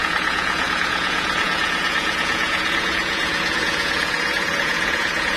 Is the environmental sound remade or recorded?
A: remade